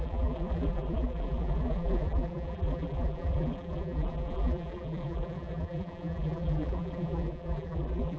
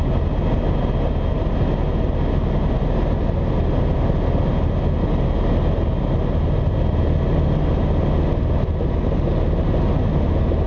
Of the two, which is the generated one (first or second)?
first